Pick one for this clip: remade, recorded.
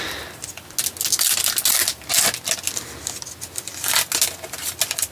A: recorded